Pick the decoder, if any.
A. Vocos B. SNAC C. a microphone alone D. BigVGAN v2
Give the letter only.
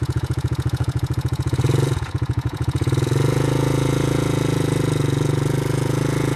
A